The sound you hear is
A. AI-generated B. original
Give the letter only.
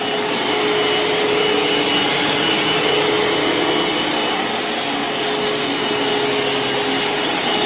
B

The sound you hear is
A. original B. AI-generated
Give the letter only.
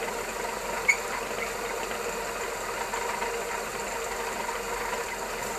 A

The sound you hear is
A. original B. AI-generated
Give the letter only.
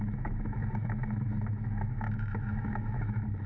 B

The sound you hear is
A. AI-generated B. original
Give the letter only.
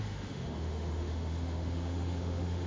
A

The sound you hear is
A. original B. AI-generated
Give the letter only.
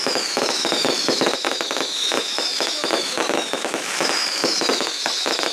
B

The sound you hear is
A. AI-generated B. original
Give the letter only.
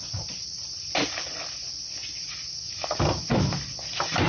B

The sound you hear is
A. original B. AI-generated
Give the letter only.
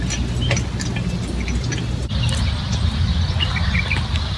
A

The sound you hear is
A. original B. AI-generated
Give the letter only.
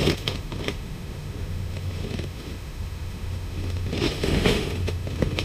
B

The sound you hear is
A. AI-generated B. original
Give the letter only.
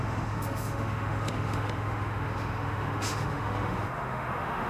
A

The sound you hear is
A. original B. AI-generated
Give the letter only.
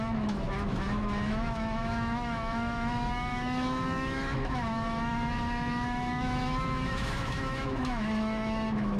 B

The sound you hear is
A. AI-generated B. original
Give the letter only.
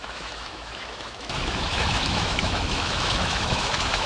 A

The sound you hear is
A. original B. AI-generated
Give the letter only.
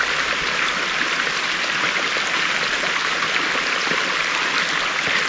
A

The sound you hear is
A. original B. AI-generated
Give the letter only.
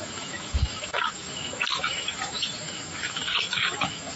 B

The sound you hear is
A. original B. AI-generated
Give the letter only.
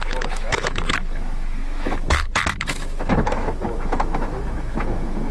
B